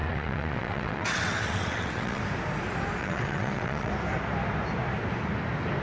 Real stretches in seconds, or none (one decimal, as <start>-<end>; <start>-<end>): 2.2-3.0; 3.9-5.8